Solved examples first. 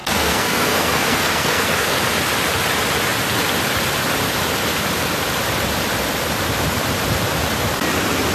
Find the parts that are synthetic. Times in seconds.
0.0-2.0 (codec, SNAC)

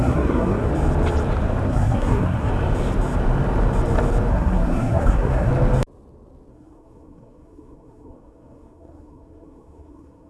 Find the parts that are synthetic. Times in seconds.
0.0-0.7 (codec, SNAC); 1.7-2.5; 4.3-5.5; 6.5-10.3

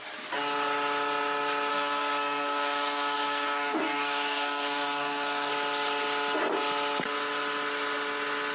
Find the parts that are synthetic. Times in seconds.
1.7-5.5 (codec, SNAC)

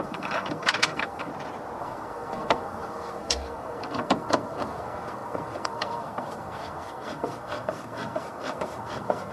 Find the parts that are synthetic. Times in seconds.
0.0-1.3 (codec, SNAC); 1.8-9.3

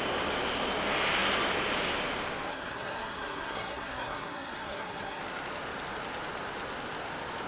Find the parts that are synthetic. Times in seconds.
2.5-5.2 (codec, SNAC)

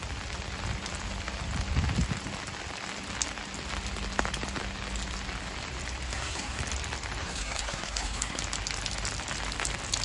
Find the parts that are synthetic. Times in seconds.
6.1-6.6 (codec, SNAC); 7.2-8.4